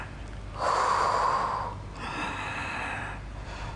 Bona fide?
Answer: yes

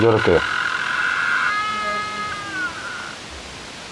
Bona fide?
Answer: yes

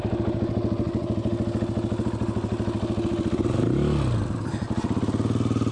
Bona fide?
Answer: yes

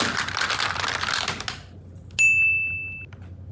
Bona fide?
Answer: yes